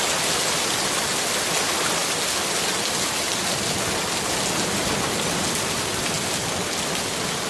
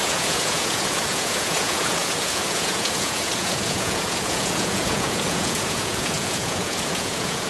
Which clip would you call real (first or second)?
first